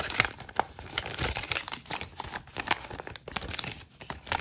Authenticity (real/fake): real